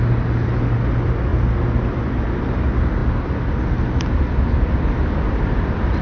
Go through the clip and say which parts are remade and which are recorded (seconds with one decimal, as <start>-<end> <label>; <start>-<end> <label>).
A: 0.0-6.0 recorded